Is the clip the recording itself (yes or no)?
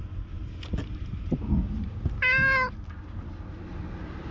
yes